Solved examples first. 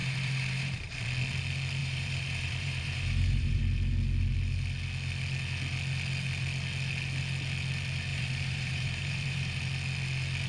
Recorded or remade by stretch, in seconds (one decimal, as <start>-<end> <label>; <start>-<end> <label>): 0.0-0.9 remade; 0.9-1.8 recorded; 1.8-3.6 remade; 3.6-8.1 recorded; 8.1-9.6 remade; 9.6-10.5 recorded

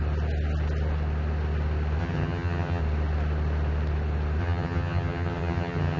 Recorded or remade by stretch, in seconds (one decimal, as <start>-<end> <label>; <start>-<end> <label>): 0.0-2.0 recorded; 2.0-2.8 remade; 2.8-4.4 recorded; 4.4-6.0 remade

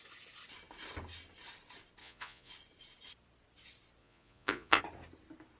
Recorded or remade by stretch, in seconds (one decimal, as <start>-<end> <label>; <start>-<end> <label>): 0.0-2.0 recorded; 2.0-2.5 remade; 2.5-4.0 recorded; 4.0-4.8 remade; 4.8-5.6 recorded

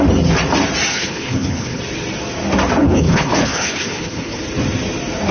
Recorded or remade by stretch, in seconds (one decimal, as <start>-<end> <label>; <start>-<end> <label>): 0.0-0.9 recorded; 0.9-1.8 remade; 1.8-2.8 recorded; 2.8-4.4 remade; 4.4-5.3 recorded

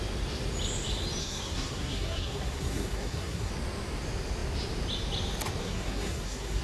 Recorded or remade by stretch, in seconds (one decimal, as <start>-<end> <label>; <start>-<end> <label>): 0.0-1.2 recorded; 1.2-3.5 remade; 3.5-5.6 recorded; 5.6-6.6 remade